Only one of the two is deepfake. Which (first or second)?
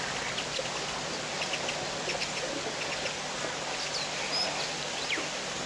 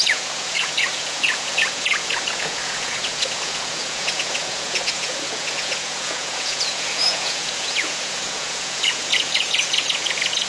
second